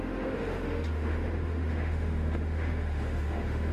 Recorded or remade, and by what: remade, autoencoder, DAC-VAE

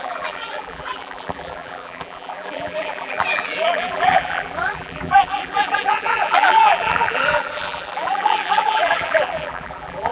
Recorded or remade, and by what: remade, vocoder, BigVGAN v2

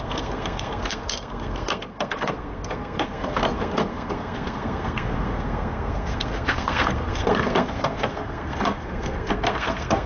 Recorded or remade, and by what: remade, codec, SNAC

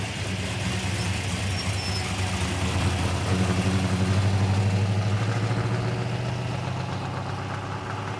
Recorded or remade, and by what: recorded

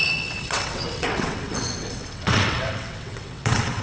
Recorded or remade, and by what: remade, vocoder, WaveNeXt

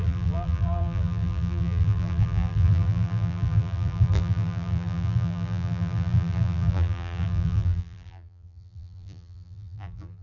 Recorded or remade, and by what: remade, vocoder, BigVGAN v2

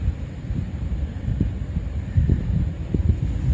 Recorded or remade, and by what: recorded